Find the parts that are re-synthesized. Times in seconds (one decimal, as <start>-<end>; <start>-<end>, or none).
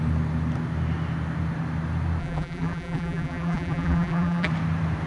2.2-4.5